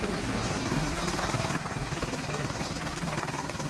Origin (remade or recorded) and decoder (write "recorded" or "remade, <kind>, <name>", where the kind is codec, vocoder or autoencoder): remade, codec, SNAC